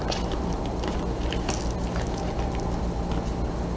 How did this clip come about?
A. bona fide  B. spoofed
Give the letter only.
A